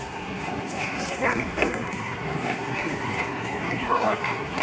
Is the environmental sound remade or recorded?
remade